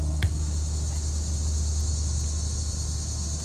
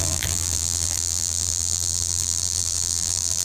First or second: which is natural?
first